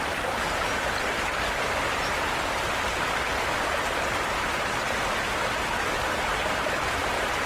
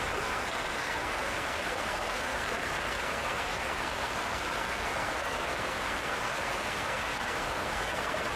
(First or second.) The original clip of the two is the first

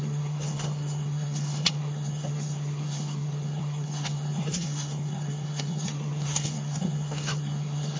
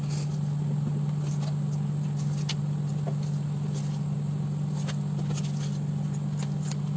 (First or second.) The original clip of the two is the second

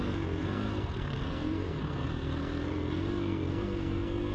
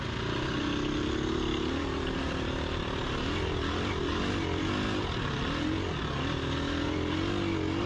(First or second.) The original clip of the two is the second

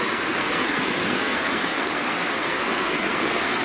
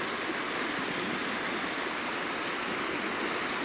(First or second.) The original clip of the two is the second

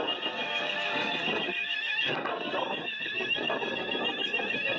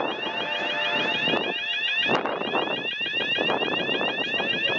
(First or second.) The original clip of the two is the second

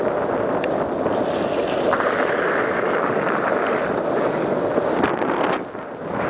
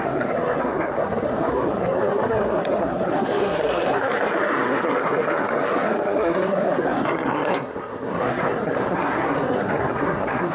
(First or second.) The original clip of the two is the first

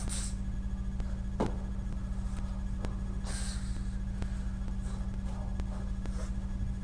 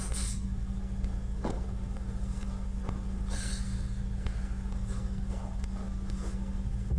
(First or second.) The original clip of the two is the first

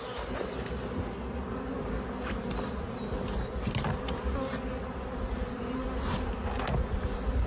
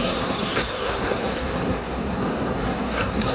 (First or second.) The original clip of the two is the first